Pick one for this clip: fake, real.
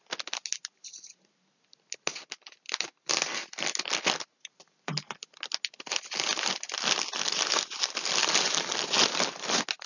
real